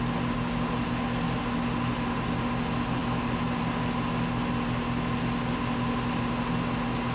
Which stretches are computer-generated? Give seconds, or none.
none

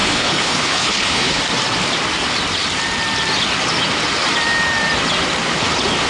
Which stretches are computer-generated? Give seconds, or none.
0.0-1.4

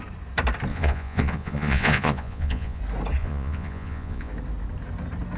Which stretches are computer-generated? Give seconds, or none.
0.7-2.8; 3.2-4.3

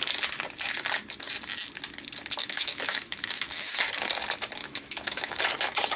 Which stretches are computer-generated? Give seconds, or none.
2.4-3.7; 4.6-5.4

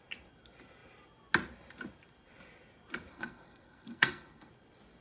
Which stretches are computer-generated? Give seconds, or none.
3.1-4.5